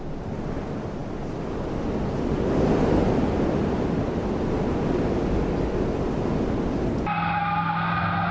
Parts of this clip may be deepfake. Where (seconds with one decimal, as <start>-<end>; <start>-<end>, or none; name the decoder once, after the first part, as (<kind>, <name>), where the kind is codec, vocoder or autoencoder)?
none